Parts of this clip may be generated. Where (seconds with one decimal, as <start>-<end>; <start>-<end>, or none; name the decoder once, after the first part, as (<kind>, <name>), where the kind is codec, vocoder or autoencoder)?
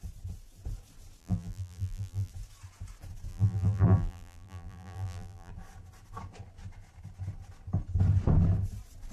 1.2-2.3 (vocoder, BigVGAN v2); 3.3-5.5